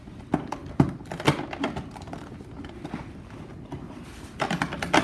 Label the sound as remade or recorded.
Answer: recorded